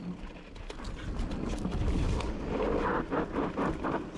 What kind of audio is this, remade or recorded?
recorded